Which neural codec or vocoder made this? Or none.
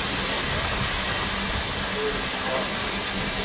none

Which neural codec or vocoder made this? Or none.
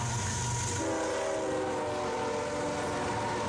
none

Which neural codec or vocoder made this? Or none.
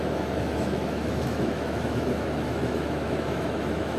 autoencoder, DAC-VAE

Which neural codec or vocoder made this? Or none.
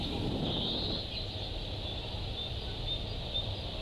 none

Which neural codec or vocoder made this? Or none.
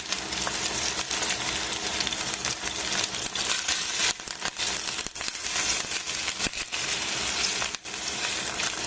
none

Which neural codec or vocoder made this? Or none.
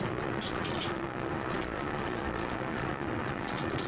vocoder, Vocos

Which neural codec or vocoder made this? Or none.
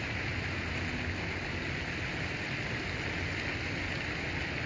none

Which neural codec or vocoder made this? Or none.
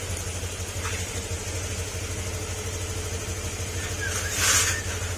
none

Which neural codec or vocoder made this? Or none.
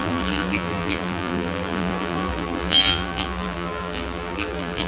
vocoder, BigVGAN v2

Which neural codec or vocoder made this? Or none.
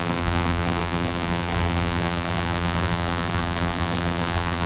vocoder, BigVGAN v2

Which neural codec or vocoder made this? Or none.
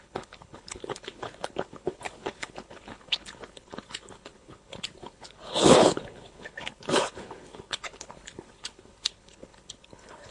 codec, HILCodec